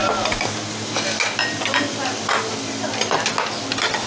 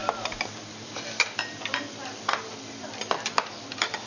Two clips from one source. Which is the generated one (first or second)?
second